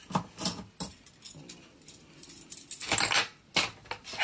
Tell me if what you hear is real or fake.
real